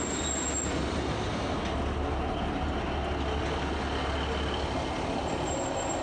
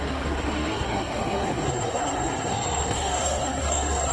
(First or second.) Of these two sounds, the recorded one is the first